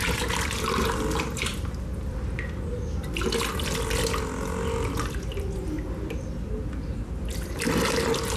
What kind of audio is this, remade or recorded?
recorded